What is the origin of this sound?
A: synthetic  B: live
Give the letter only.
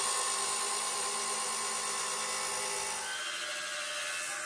B